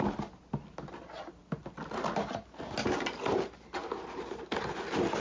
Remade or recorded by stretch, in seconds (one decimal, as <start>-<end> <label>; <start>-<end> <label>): 0.0-5.2 recorded